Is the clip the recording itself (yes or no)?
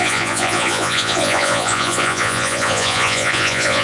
no